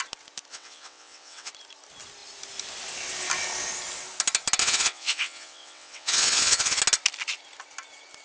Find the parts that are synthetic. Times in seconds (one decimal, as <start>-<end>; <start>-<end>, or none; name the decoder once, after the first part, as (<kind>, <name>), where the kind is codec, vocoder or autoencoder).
0.5-1.5 (vocoder, WaveNeXt); 4.6-6.8